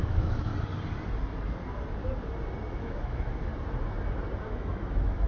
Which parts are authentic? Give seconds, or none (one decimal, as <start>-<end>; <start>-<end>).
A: 0.5-2.7; 3.5-4.4